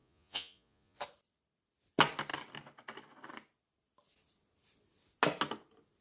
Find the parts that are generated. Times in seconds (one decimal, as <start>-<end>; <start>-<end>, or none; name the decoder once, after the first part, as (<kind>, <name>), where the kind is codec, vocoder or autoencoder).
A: 0.0-1.0 (vocoder, Vocos)

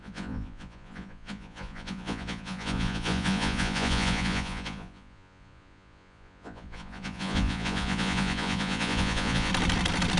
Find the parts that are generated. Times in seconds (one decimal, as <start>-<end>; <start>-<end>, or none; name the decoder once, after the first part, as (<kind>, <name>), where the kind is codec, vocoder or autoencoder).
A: 0.0-9.5 (vocoder, Vocos)

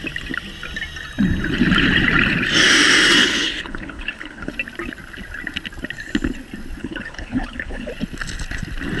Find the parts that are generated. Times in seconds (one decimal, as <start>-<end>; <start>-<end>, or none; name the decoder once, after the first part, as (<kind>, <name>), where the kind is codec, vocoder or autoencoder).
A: 3.2-4.5 (codec, HILCodec); 6.8-7.9

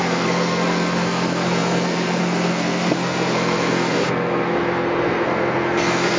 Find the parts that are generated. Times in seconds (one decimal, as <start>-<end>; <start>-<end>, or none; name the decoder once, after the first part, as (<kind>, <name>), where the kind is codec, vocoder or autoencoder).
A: 0.0-6.2 (codec, SNAC)

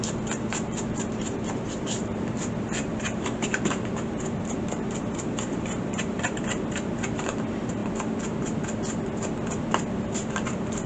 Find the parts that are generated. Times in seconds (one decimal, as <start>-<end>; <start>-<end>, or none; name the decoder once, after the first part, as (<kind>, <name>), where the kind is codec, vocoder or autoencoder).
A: 0.0-7.8 (vocoder, BigVGAN v2); 10.0-10.9

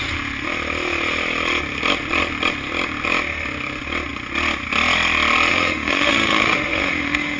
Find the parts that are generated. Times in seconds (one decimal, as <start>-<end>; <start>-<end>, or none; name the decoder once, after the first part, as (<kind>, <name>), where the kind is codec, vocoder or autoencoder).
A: 5.5-7.4 (autoencoder, DAC-VAE)

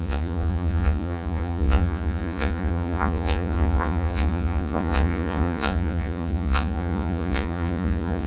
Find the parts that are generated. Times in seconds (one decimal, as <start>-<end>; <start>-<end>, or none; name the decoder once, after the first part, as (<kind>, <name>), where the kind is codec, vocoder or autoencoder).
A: 0.0-8.3 (vocoder, Vocos)